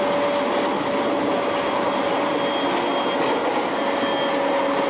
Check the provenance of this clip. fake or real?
real